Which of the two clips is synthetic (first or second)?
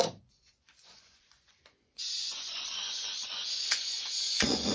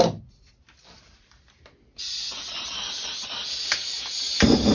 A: first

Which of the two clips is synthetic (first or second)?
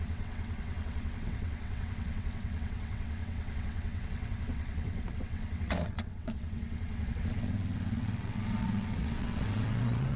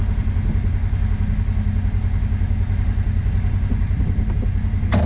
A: first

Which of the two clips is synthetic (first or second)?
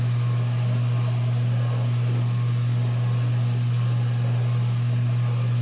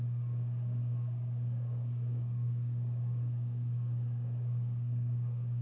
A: second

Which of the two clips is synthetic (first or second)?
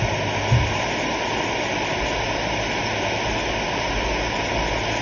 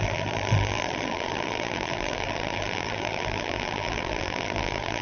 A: second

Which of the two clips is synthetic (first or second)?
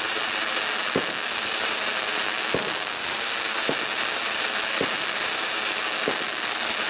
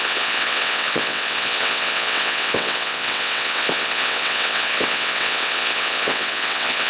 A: second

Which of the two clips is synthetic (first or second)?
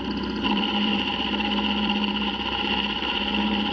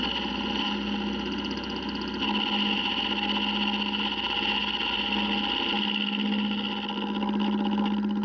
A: first